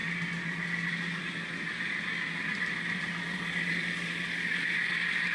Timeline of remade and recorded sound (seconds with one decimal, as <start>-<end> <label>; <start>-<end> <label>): 0.0-5.3 recorded